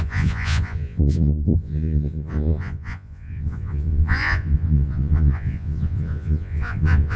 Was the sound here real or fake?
fake